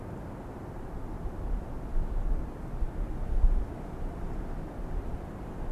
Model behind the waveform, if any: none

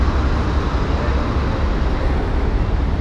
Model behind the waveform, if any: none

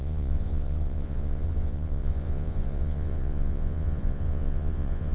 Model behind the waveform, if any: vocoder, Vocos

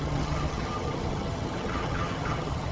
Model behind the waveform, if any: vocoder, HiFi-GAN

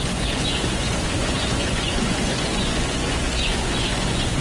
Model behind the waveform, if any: vocoder, Vocos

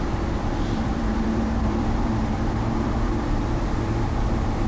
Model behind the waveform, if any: vocoder, BigVGAN v2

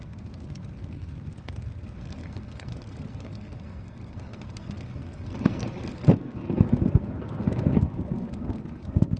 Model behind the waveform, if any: codec, SNAC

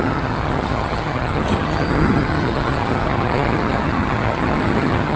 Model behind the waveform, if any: vocoder, HiFi-GAN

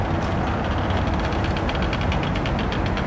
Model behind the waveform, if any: none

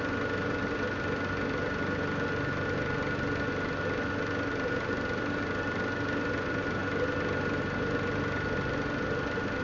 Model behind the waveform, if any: none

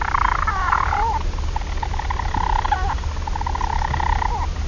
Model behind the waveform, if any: none